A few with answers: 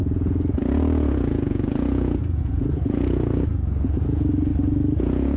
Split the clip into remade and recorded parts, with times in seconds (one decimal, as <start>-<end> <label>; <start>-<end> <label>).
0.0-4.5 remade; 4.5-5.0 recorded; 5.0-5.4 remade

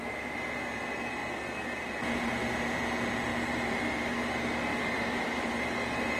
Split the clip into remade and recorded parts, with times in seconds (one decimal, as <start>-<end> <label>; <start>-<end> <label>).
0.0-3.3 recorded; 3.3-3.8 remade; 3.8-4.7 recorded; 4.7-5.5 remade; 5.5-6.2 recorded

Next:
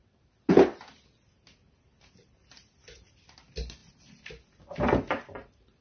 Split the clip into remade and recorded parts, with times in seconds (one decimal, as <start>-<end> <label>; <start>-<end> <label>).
0.0-5.8 recorded

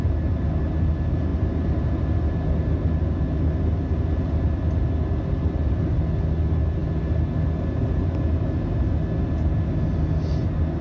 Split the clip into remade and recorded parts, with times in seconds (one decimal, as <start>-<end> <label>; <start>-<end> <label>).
0.0-10.8 recorded